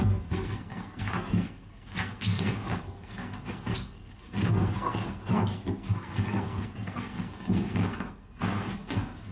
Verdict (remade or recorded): remade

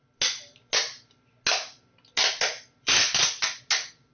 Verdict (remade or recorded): recorded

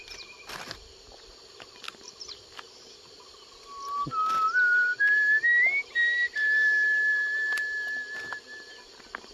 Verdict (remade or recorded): recorded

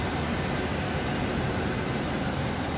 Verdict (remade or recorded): recorded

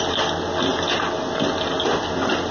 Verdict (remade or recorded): recorded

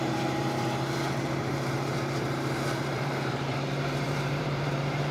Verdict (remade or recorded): remade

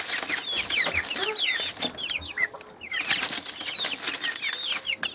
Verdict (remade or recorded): recorded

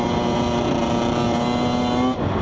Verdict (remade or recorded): recorded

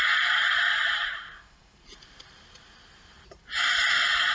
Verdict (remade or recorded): remade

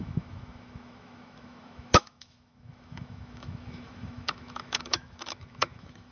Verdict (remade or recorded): remade